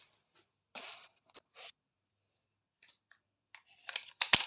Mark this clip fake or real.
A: real